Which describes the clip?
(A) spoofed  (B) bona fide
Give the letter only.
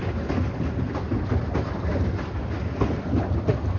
B